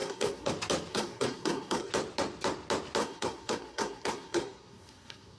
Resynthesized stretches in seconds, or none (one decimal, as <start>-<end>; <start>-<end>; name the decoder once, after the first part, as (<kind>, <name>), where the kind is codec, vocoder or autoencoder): 0.0-0.5 (codec, SNAC); 0.9-1.9; 3.0-5.4